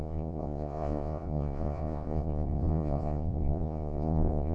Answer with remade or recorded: remade